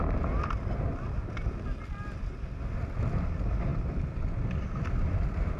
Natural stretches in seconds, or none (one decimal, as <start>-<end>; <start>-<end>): 0.0-5.6